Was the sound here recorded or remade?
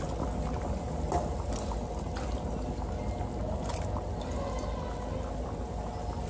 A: recorded